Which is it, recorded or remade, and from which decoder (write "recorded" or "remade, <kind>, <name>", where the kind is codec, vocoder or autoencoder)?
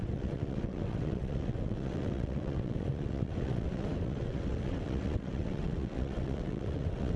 remade, vocoder, WaveNeXt